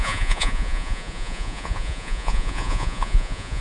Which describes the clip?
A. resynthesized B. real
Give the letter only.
A